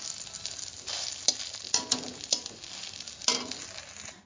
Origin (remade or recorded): recorded